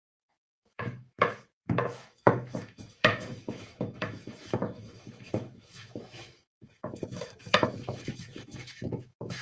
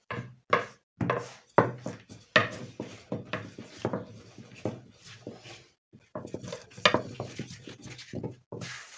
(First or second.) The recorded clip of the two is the second